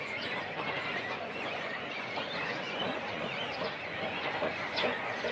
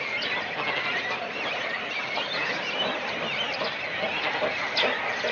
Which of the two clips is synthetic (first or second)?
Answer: first